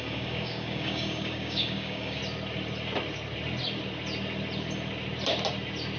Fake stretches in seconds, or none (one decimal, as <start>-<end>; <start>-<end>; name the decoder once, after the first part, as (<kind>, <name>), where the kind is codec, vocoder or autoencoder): 0.0-2.2 (codec, DAC)